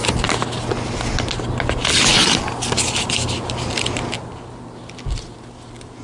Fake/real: real